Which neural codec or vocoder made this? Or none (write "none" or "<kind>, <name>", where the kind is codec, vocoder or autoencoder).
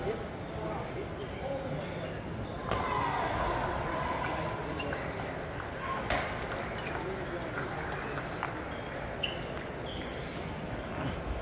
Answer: none